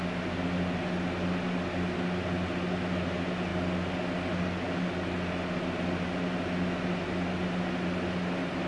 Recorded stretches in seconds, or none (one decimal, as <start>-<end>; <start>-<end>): 0.0-8.7